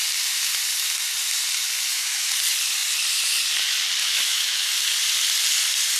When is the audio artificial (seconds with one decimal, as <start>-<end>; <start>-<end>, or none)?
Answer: 1.9-2.4; 4.0-4.7